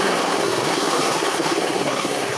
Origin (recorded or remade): remade